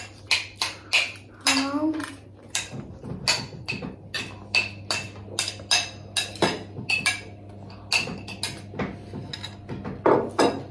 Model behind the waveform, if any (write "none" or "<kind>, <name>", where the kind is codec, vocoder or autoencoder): none